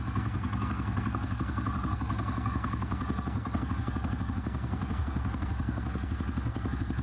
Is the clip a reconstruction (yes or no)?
yes